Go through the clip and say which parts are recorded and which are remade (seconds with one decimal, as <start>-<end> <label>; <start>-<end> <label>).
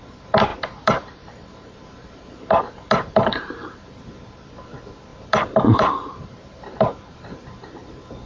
0.0-0.5 recorded; 0.5-4.1 remade; 4.1-5.1 recorded; 5.1-7.9 remade; 7.9-8.3 recorded